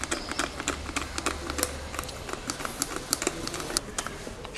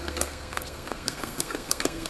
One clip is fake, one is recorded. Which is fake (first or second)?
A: second